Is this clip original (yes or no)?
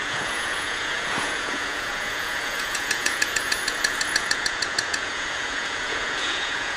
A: no